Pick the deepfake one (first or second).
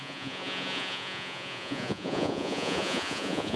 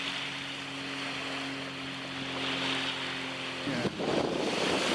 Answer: first